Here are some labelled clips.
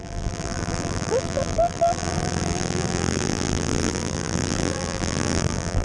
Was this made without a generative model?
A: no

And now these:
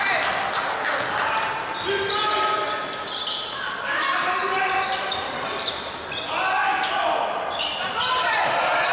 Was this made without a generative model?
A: yes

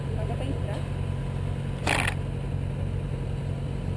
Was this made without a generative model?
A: yes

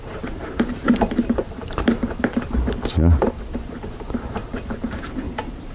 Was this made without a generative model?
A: no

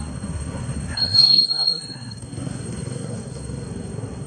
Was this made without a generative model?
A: no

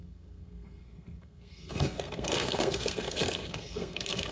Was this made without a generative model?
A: no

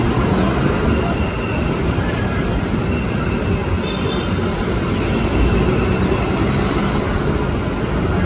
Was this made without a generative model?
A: yes